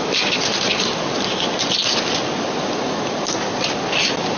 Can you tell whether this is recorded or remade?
recorded